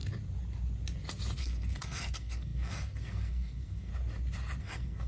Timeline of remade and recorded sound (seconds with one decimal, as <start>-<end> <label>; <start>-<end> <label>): 0.0-1.4 recorded; 1.4-3.9 remade; 3.9-4.6 recorded; 4.6-5.1 remade